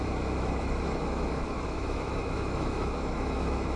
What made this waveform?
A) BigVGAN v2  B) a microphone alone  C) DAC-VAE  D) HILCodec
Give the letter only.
C